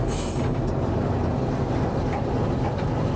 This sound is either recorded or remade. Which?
recorded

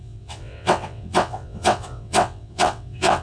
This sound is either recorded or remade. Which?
remade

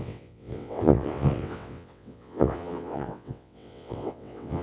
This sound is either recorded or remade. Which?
remade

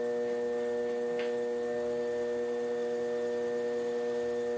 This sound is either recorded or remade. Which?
recorded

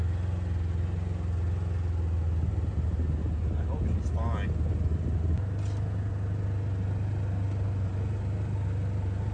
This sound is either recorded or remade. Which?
recorded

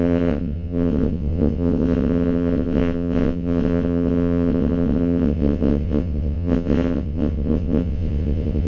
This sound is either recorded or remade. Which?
remade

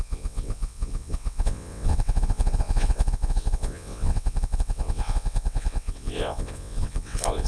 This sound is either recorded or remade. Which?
remade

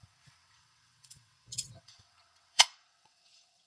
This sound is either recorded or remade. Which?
remade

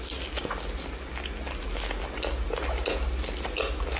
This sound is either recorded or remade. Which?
recorded